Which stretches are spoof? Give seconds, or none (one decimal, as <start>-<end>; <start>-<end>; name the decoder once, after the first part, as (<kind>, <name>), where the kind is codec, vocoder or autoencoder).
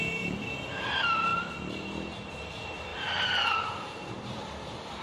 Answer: 0.0-5.0 (vocoder, BigVGAN v2)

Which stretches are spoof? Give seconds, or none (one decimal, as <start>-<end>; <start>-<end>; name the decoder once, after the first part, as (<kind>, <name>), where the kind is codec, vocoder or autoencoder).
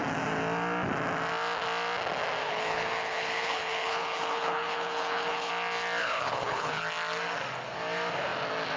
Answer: 2.4-5.5 (codec, HILCodec); 6.0-6.8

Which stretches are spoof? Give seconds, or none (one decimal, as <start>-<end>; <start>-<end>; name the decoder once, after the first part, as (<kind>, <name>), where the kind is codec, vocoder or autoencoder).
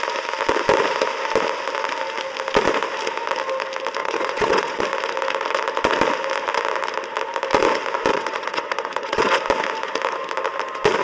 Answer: 4.0-4.8 (vocoder, WaveNeXt); 8.1-9.4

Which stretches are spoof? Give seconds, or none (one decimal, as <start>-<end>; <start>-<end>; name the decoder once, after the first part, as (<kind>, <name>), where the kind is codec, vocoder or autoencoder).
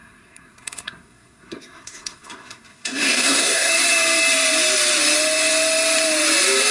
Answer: 0.0-3.7 (codec, SNAC)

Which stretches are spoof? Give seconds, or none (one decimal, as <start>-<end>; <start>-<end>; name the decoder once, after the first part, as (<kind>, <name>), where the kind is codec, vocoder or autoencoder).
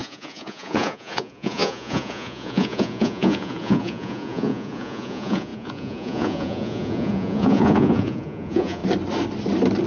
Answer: 0.0-8.8 (vocoder, Vocos)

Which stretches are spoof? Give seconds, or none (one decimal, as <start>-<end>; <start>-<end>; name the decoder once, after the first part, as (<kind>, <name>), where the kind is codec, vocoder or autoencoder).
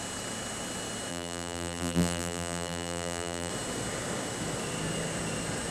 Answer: 1.1-3.5 (vocoder, BigVGAN v2)